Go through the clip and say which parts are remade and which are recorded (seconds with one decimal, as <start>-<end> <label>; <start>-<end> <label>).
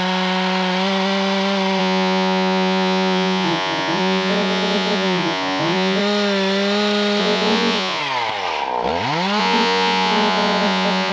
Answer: 0.0-1.8 recorded; 1.8-6.0 remade; 6.0-7.2 recorded; 7.2-8.0 remade; 8.0-9.4 recorded; 9.4-11.1 remade